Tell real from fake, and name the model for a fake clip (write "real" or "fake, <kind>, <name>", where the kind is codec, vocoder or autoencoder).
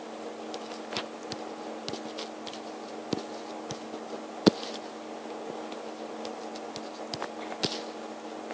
real